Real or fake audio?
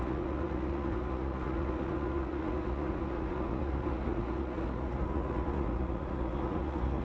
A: fake